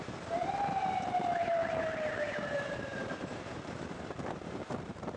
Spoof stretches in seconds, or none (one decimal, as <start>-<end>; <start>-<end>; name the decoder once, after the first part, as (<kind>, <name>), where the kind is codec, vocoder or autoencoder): 0.0-1.6 (vocoder, BigVGAN v2); 2.1-5.2

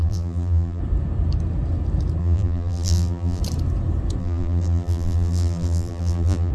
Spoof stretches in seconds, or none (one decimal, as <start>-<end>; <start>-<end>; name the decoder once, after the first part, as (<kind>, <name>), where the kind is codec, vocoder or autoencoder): 0.0-0.8 (vocoder, BigVGAN v2); 2.2-3.4; 4.2-6.5

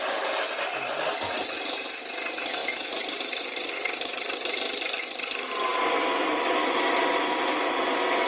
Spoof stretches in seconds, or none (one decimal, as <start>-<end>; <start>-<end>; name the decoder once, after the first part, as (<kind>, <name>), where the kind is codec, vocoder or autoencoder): 2.6-5.0 (vocoder, BigVGAN v2)

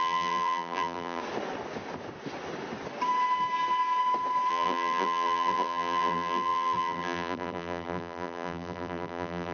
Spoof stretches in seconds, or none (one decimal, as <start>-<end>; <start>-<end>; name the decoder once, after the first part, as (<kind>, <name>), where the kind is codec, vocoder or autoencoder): 0.0-1.2 (vocoder, BigVGAN v2); 4.5-9.5

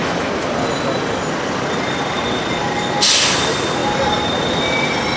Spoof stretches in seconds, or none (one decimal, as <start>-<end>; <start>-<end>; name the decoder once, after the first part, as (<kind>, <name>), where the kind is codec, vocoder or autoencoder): none

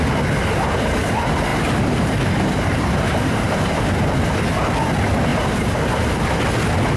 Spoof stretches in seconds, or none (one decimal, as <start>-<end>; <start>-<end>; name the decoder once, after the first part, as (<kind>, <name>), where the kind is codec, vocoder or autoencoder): 1.5-3.8 (vocoder, BigVGAN v2)

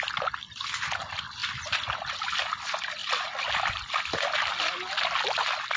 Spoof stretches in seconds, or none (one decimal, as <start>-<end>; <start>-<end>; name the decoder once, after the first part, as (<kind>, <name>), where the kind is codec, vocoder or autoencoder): 1.4-2.5 (vocoder, BigVGAN v2); 3.0-4.5